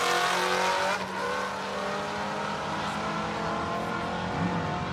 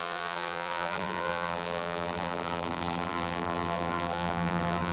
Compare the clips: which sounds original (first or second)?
first